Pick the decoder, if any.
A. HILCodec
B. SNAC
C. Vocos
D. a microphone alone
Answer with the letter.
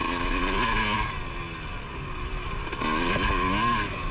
D